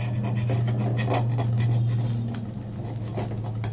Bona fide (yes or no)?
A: yes